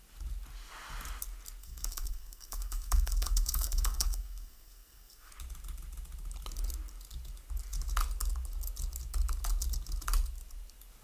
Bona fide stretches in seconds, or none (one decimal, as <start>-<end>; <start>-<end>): 0.0-1.6; 5.3-11.0